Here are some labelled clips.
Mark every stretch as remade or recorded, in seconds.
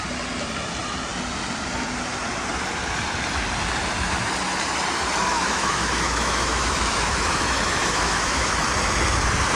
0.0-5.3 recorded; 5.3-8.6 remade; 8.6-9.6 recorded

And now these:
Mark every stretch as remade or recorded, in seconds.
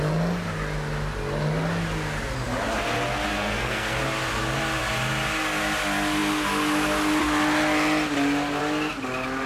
0.0-3.3 recorded; 3.3-4.0 remade; 4.0-9.5 recorded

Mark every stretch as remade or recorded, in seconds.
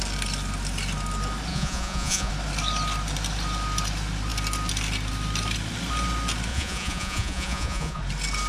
0.0-1.5 recorded; 1.5-2.3 remade; 2.3-6.5 recorded; 6.5-8.0 remade; 8.0-8.5 recorded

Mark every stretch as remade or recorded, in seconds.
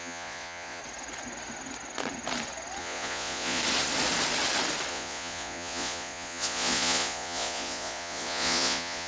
0.0-0.8 remade; 0.8-2.8 recorded; 2.8-3.6 remade; 3.6-4.9 recorded; 4.9-9.1 remade